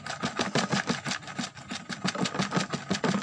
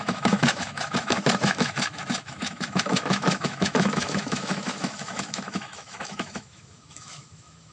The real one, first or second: first